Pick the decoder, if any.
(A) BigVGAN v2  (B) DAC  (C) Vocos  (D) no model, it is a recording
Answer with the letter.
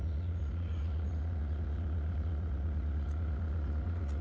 C